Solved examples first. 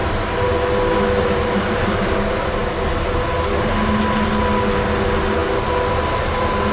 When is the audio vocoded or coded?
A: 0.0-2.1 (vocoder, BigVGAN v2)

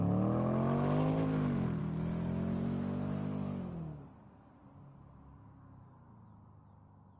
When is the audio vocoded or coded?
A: none

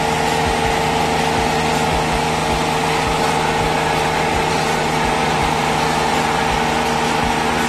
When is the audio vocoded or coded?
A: 5.4-6.3 (vocoder, BigVGAN v2)